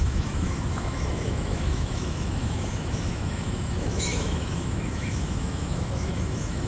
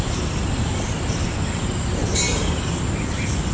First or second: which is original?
second